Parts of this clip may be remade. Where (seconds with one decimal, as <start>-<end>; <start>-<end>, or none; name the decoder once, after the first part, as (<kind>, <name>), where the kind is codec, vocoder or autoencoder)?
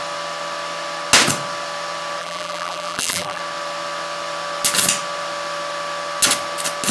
2.2-3.4 (vocoder, BigVGAN v2)